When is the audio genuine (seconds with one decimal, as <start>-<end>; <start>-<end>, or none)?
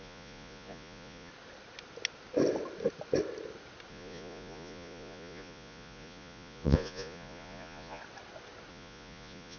1.3-3.9; 8.0-8.7